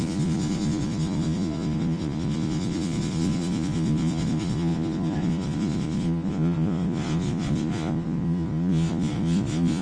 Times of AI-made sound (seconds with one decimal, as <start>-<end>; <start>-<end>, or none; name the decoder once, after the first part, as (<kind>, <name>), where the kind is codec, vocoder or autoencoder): 0.0-9.8 (vocoder, Vocos)